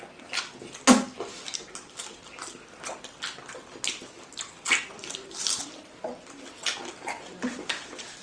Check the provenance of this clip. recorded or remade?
recorded